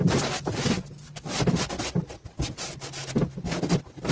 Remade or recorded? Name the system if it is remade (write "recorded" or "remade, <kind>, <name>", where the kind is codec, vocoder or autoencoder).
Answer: recorded